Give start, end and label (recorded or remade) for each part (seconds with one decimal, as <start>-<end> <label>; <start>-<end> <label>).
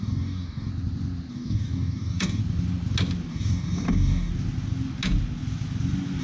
0.0-0.7 remade; 0.7-1.3 recorded; 1.3-2.4 remade; 2.4-3.3 recorded; 3.3-4.3 remade; 4.3-6.2 recorded